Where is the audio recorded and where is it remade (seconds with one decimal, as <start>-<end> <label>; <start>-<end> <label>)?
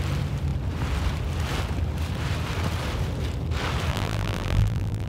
0.0-3.9 recorded; 3.9-5.1 remade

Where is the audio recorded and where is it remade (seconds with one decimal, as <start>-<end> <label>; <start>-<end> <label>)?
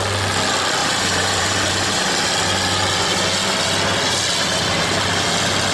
0.0-0.8 recorded; 0.8-2.1 remade; 2.1-5.7 recorded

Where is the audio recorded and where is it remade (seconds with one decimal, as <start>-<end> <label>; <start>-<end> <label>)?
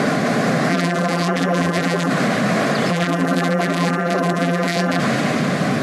0.0-0.7 recorded; 0.7-2.1 remade; 2.1-2.9 recorded; 2.9-5.0 remade; 5.0-5.8 recorded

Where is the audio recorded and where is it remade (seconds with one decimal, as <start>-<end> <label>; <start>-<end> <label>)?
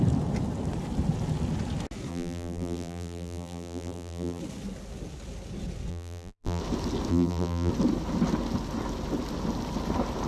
0.0-2.1 recorded; 2.1-4.4 remade; 4.4-5.9 recorded; 5.9-6.6 remade; 6.6-7.1 recorded; 7.1-7.7 remade; 7.7-10.3 recorded